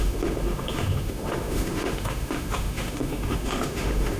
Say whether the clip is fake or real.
fake